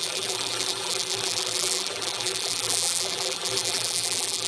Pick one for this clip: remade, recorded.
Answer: remade